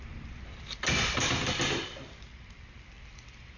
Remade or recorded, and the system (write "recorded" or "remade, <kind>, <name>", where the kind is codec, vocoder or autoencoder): recorded